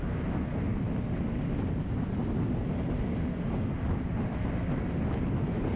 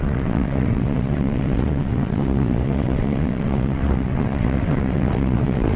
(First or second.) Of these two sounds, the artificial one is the second